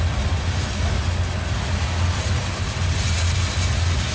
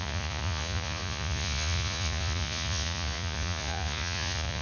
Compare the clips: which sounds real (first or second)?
first